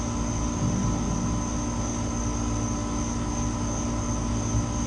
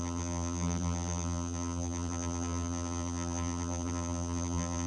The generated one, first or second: second